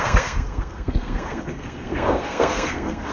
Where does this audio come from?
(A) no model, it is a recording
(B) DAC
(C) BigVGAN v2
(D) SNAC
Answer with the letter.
D